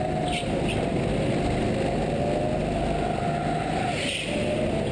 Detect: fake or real real